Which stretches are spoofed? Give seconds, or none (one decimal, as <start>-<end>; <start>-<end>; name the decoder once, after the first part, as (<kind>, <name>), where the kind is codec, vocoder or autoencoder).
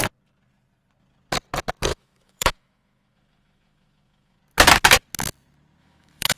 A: 1.9-4.4 (autoencoder, DAC-VAE); 5.8-6.4